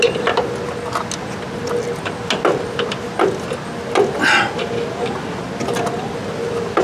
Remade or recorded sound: recorded